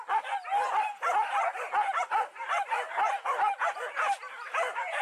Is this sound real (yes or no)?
yes